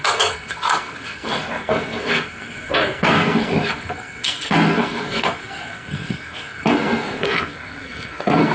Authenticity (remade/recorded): remade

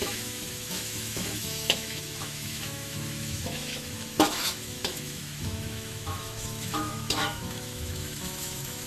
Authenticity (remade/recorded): remade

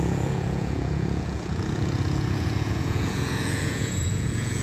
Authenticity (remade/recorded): remade